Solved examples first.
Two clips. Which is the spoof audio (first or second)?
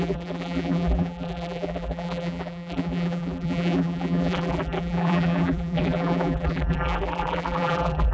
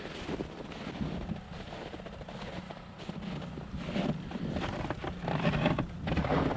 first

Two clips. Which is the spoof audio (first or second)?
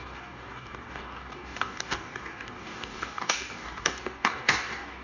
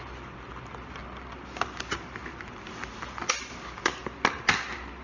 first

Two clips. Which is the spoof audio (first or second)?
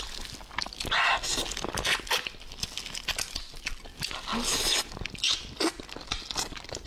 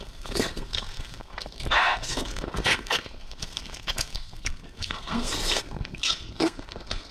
second